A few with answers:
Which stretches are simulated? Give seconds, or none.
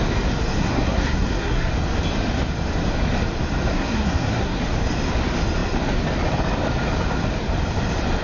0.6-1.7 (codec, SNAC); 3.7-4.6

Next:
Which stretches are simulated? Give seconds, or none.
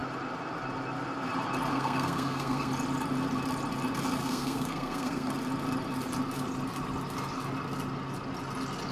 1.7-2.7 (codec, SNAC); 4.2-5.3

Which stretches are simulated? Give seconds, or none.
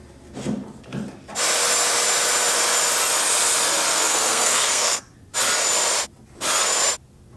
3.9-5.0 (codec, SNAC)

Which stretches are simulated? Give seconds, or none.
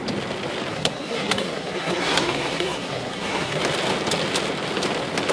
0.7-3.6 (codec, SNAC)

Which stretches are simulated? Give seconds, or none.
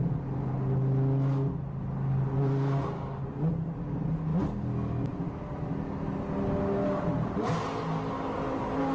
none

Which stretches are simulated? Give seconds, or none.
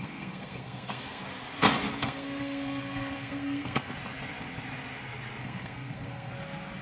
0.0-1.2 (codec, SNAC); 1.9-3.9; 5.4-6.3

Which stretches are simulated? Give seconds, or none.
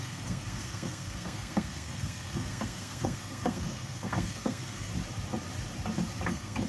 0.0-4.9 (codec, SNAC); 6.3-6.7